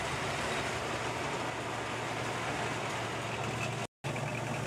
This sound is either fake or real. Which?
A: real